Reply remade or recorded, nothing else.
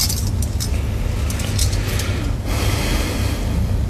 recorded